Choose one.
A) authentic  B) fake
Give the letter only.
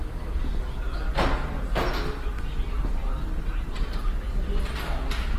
A